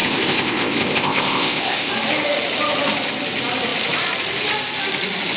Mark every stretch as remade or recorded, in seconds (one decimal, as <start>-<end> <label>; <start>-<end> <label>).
0.0-1.9 remade; 1.9-5.4 recorded